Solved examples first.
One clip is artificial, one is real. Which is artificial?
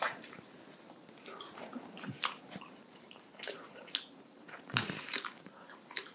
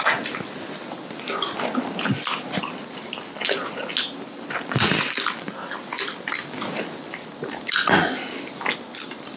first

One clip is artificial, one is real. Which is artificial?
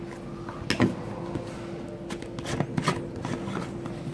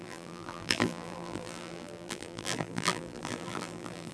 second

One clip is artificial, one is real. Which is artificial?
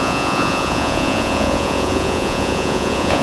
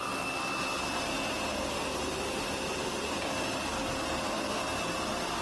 first